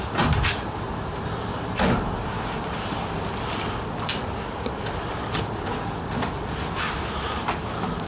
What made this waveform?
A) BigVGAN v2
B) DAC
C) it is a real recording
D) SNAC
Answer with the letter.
C